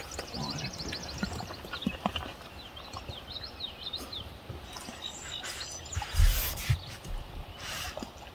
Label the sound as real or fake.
real